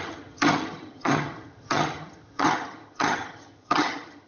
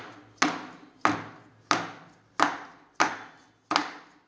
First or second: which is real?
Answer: second